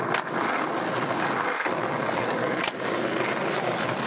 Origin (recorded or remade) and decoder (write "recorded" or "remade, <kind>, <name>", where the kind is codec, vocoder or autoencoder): recorded